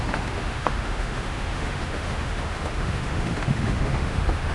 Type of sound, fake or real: fake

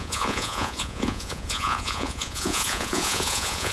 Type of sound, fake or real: fake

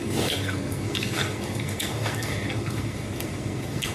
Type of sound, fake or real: fake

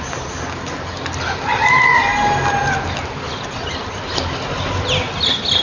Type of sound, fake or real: real